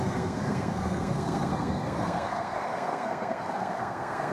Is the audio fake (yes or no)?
yes